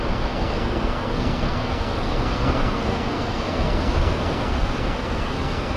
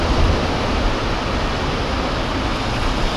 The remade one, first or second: first